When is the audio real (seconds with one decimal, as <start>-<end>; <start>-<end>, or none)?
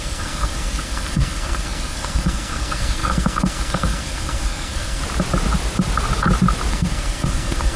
5.0-6.7